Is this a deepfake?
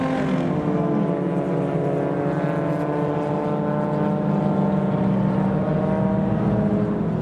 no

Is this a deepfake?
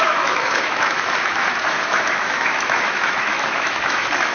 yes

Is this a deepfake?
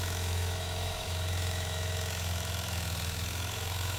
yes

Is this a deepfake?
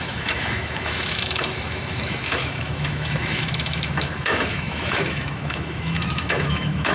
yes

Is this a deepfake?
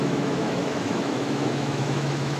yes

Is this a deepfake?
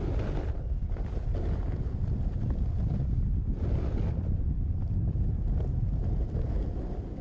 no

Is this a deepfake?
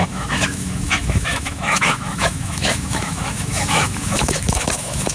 yes